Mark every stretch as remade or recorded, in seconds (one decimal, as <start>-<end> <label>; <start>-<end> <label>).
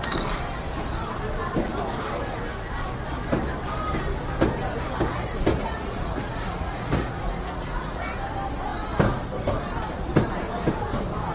0.0-5.5 recorded; 5.5-8.1 remade; 8.1-11.3 recorded